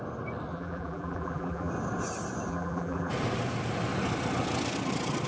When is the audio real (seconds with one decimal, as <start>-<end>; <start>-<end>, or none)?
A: 0.0-0.5; 1.7-2.5; 3.1-5.3